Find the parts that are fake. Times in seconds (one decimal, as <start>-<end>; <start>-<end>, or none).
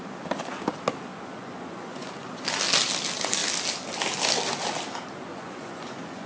1.1-2.4; 5.3-6.3